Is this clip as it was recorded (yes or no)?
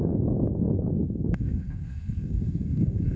no